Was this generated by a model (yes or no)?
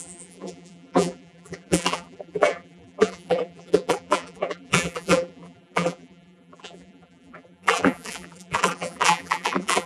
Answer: yes